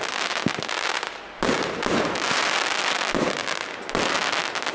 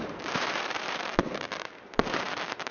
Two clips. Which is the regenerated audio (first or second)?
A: second